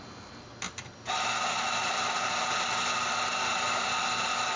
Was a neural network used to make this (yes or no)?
no